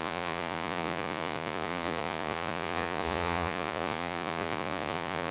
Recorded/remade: remade